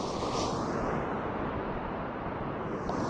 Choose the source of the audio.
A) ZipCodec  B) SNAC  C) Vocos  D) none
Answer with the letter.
D